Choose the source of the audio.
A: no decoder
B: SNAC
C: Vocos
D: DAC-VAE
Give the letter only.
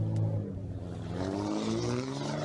A